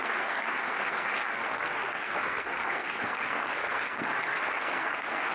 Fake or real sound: fake